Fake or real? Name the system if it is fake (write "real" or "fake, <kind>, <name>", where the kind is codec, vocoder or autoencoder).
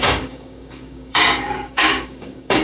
fake, codec, DAC